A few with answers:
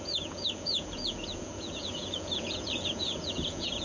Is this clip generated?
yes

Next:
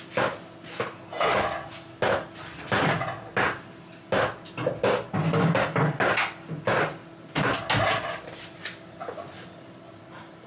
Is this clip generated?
no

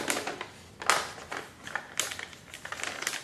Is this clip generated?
no